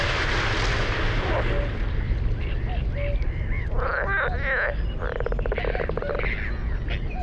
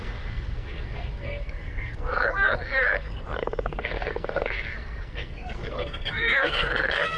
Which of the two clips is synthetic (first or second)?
second